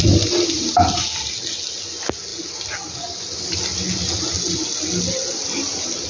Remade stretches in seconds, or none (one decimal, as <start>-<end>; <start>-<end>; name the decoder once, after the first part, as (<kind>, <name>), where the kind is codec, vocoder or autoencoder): none